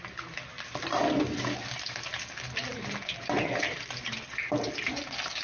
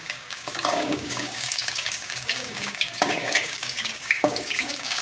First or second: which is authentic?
first